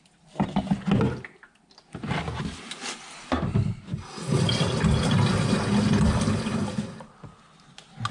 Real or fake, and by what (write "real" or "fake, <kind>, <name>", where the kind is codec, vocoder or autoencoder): real